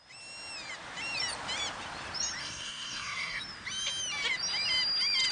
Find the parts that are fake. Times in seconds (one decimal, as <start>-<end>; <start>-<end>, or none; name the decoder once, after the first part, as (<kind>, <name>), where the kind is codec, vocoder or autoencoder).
2.4-3.4 (codec, SNAC)